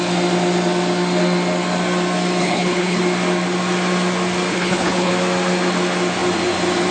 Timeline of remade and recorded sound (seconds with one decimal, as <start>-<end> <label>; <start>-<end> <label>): 0.0-2.4 recorded; 2.4-3.0 remade; 3.0-4.5 recorded; 4.5-5.1 remade; 5.1-6.9 recorded